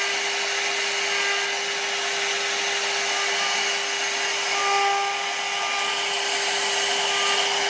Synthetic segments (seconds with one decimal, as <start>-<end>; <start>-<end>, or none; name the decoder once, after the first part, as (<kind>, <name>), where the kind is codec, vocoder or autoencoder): none